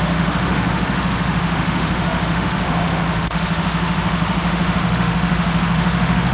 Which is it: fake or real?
fake